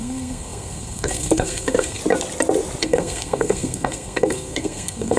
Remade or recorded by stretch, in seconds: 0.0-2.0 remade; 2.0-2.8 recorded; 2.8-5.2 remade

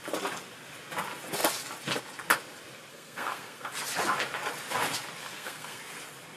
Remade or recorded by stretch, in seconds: 0.0-2.9 recorded; 2.9-3.7 remade; 3.7-5.2 recorded; 5.2-5.8 remade; 5.8-6.4 recorded

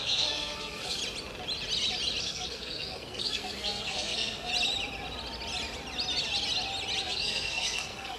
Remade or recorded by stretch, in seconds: 0.0-1.0 remade; 1.0-2.2 recorded; 2.2-4.5 remade; 4.5-7.0 recorded; 7.0-8.2 remade

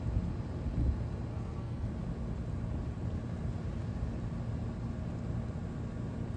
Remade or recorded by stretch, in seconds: 0.0-1.3 recorded; 1.3-1.9 remade; 1.9-6.4 recorded